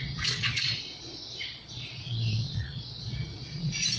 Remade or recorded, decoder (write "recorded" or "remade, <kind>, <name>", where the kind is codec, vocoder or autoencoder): remade, vocoder, Vocos